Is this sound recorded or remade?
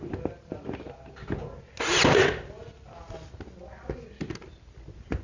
recorded